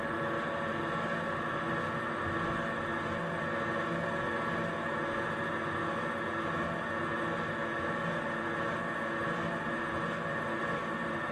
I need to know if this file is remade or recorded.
recorded